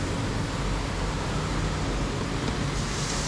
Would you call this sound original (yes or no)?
yes